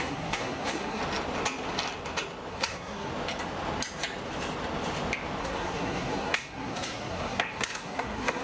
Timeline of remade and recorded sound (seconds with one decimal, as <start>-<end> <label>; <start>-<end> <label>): 0.0-1.0 remade; 1.0-2.5 recorded; 2.5-3.1 remade; 3.1-5.4 recorded; 5.4-8.4 remade

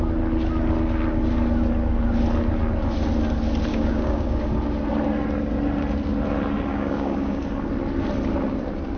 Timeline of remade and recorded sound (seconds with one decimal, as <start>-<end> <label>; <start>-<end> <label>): 0.0-3.7 recorded; 3.7-4.4 remade; 4.4-6.7 recorded; 6.7-7.4 remade; 7.4-9.0 recorded

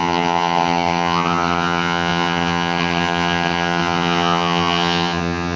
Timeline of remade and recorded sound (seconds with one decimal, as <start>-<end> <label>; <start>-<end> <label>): 0.0-5.6 remade

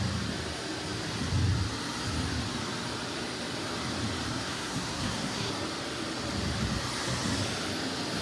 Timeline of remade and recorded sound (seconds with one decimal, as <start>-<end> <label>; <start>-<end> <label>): 0.0-4.3 recorded; 4.3-5.5 remade; 5.5-8.2 recorded

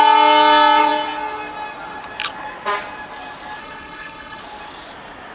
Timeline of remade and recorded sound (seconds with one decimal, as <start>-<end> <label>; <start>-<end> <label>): 0.0-3.6 recorded; 3.6-4.4 remade; 4.4-5.3 recorded

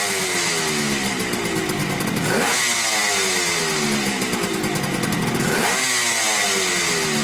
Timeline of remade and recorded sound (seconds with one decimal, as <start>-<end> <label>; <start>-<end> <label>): 0.0-7.2 recorded

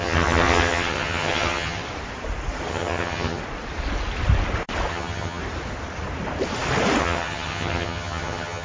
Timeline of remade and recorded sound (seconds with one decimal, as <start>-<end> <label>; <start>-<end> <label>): 0.0-1.8 remade; 1.8-2.7 recorded; 2.7-3.4 remade; 3.4-4.9 recorded; 4.9-5.4 remade; 5.4-7.0 recorded; 7.0-8.6 remade